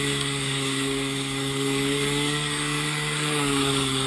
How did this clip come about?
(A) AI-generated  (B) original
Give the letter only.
A